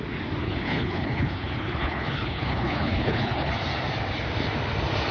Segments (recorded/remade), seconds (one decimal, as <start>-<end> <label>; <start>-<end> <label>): 0.0-0.4 recorded; 0.4-3.5 remade; 3.5-5.1 recorded